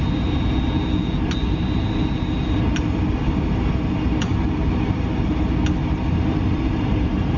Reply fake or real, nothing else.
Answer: real